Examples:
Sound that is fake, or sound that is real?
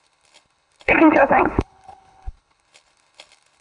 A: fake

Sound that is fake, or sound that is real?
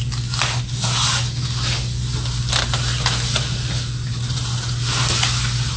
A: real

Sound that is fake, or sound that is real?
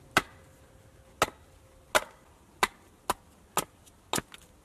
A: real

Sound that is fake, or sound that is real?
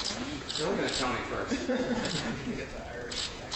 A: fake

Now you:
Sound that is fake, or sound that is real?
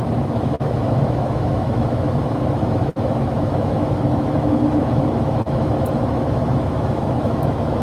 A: fake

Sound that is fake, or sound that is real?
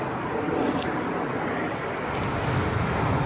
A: real